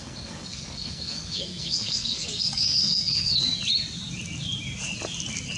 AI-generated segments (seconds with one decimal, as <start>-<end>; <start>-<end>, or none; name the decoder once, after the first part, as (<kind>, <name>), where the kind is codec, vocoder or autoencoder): 0.0-3.4 (codec, SNAC)